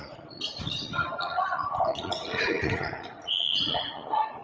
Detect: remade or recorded remade